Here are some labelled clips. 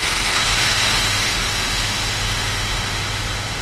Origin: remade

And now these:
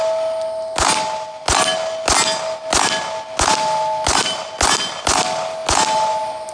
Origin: recorded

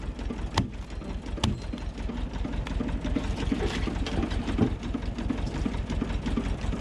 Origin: recorded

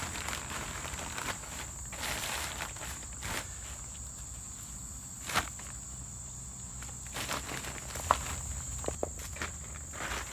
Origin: recorded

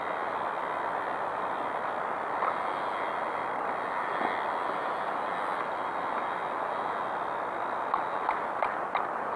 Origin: recorded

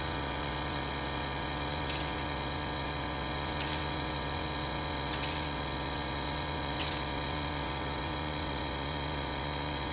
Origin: remade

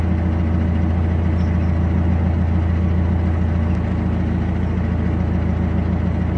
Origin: recorded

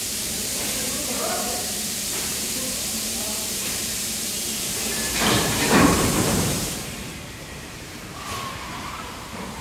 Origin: remade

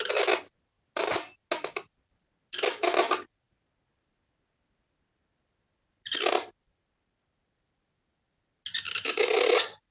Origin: recorded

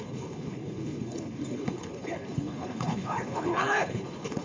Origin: remade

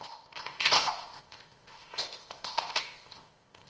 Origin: remade